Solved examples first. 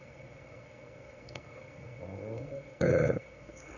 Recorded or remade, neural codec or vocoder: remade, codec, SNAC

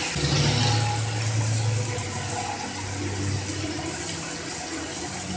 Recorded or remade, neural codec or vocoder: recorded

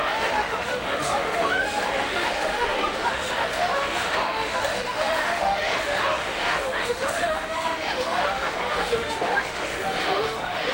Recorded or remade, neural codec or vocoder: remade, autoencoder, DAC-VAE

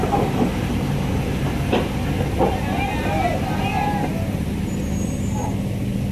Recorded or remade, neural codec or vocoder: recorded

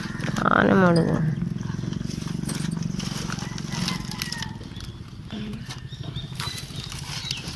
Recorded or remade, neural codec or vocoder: recorded